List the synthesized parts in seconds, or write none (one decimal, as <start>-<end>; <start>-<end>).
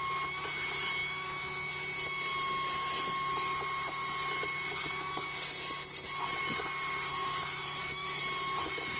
1.0-1.7; 7.1-8.2